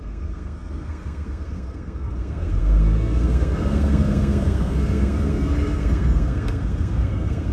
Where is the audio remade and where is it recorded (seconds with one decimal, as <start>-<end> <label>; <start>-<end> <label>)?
0.0-7.5 remade